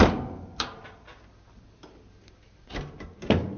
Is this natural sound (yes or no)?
yes